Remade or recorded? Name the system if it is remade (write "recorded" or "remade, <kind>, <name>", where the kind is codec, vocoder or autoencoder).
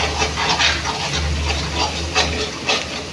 recorded